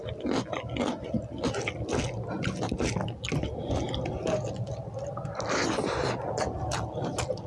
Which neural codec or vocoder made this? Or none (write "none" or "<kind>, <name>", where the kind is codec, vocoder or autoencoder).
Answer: none